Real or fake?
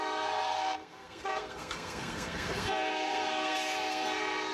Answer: fake